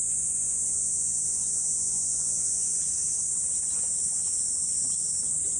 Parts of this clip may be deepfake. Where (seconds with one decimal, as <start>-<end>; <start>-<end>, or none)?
0.0-2.7